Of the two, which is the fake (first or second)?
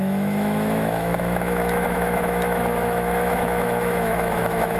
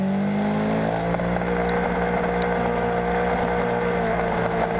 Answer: first